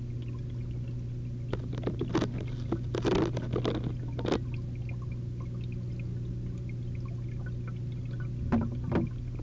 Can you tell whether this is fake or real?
real